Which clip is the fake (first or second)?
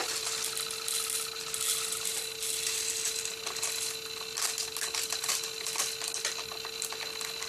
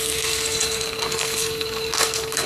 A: second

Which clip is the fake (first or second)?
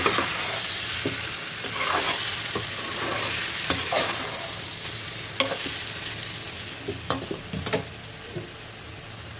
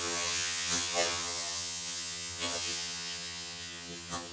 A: second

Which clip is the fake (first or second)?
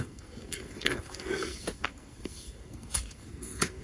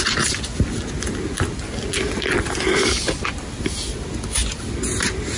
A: first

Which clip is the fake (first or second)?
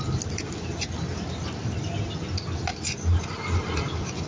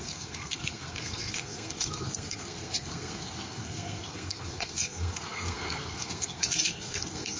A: second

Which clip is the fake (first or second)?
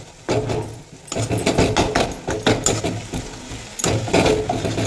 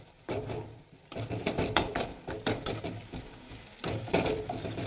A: second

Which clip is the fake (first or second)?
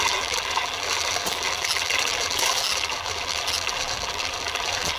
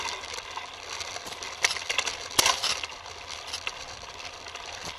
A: first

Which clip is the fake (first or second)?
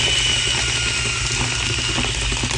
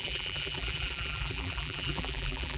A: second